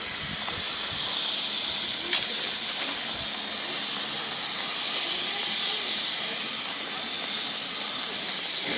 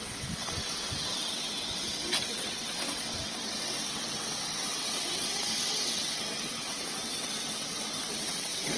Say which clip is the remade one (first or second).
second